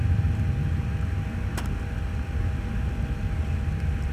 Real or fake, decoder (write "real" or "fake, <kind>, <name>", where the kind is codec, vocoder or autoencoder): real